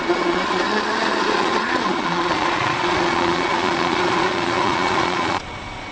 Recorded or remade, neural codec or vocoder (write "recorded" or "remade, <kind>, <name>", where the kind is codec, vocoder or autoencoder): remade, vocoder, Vocos